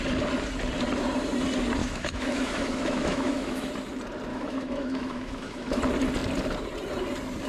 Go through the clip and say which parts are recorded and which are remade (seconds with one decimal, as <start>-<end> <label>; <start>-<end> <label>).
0.0-1.8 recorded; 1.8-3.7 remade; 3.7-4.3 recorded; 4.3-5.8 remade; 5.8-7.5 recorded